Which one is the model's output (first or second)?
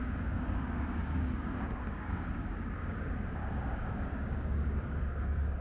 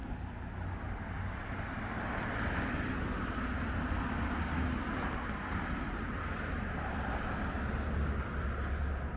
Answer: first